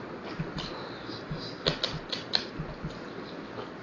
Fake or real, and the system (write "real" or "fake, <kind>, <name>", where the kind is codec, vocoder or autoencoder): real